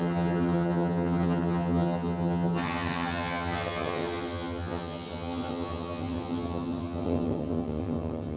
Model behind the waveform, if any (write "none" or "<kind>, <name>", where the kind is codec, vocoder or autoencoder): vocoder, HiFi-GAN